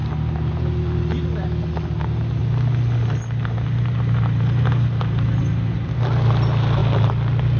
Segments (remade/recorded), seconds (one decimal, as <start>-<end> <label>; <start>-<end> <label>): 0.0-7.6 recorded